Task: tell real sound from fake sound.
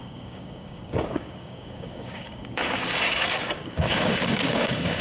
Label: fake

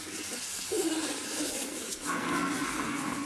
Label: fake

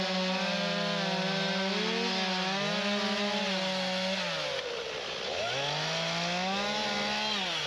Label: real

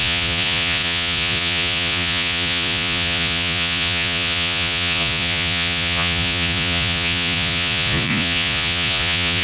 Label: fake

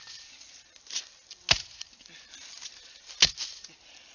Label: real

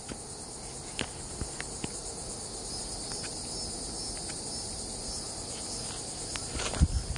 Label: real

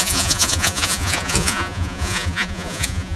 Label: fake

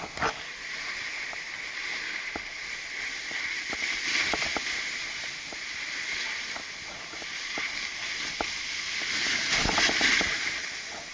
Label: real